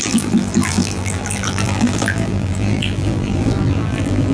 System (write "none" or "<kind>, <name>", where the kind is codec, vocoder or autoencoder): vocoder, BigVGAN v2